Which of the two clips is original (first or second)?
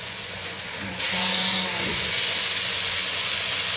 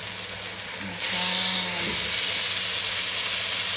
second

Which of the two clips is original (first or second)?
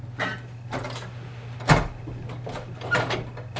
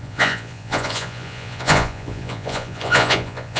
first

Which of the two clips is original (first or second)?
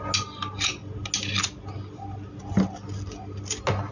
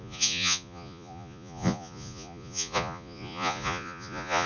first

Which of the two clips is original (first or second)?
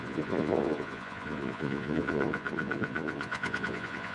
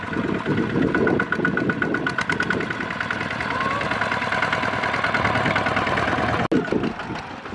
second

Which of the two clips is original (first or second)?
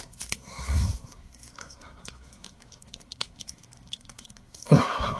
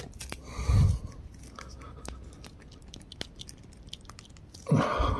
second